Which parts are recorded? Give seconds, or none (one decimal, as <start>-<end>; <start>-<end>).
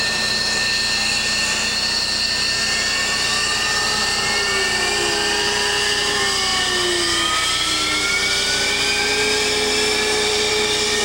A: 0.0-11.0